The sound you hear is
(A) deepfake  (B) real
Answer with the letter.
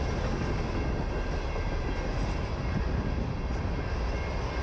B